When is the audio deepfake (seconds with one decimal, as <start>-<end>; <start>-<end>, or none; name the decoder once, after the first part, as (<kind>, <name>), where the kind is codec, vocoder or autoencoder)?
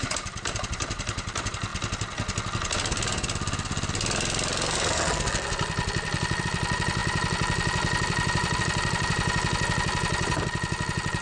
0.0-1.7 (vocoder, BigVGAN v2); 6.4-11.2